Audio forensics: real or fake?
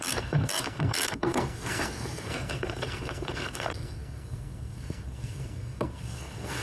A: fake